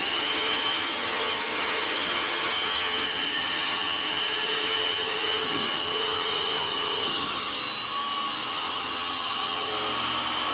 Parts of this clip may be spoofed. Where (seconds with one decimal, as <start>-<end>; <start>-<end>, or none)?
0.0-7.6; 8.5-9.7